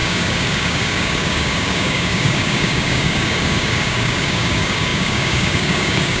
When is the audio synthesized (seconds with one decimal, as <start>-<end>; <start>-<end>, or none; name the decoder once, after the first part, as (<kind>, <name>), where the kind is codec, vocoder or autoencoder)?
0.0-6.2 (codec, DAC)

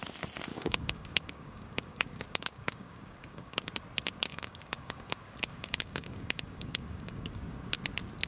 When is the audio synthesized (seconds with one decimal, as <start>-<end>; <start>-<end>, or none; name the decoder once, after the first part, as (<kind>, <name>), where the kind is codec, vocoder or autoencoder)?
0.5-3.7 (codec, DAC); 4.3-7.7

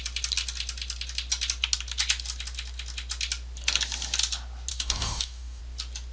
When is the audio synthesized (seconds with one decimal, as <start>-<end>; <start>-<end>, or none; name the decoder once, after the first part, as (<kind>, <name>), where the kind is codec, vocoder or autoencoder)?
4.7-5.6 (codec, DAC)